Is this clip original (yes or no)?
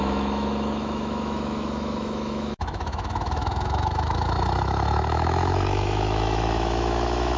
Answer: no